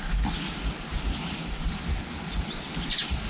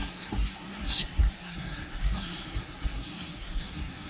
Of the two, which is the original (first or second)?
first